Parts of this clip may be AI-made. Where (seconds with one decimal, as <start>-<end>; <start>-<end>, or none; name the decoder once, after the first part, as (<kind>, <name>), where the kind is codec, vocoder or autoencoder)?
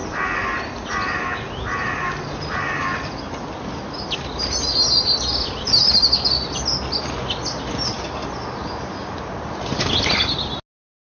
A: none